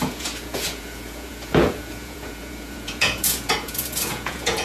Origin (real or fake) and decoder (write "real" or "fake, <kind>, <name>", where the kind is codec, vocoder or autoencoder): fake, vocoder, Vocos